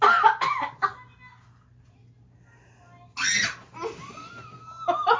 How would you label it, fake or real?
real